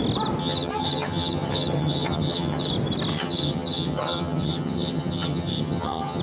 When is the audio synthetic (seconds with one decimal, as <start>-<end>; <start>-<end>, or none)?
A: 0.4-2.7; 3.1-6.2